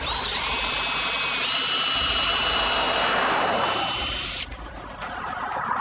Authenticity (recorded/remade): recorded